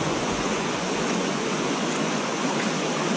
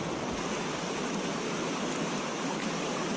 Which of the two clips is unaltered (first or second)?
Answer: second